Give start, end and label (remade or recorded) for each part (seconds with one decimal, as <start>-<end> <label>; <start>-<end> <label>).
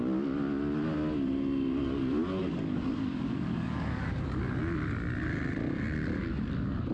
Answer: 0.0-2.4 recorded; 2.4-4.6 remade; 4.6-6.9 recorded